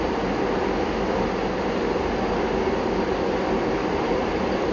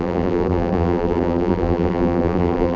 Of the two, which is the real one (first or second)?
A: first